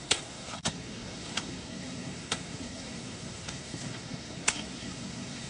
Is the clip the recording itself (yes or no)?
no